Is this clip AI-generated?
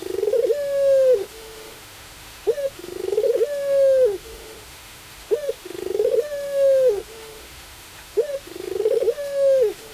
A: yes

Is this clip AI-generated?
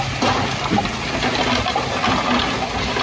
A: no